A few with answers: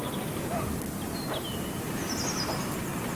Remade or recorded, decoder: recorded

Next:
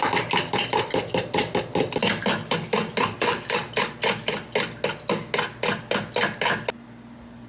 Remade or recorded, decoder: recorded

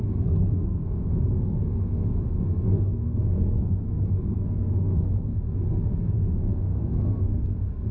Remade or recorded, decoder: remade, codec, SNAC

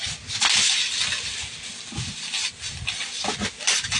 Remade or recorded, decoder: recorded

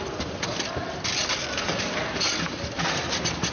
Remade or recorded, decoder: recorded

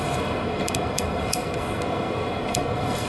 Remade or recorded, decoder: remade, codec, SNAC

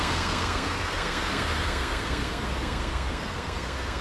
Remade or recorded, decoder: remade, codec, SNAC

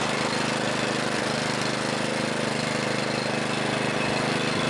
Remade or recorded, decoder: recorded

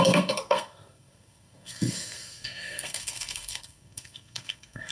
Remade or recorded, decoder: remade, codec, SNAC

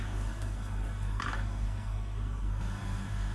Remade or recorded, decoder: remade, codec, SNAC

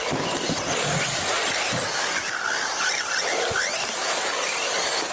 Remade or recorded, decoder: recorded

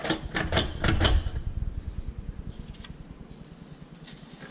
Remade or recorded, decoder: recorded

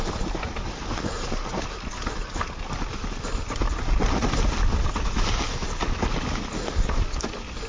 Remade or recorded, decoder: recorded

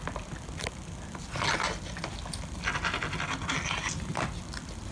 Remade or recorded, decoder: recorded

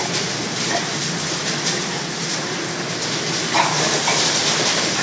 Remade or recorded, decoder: recorded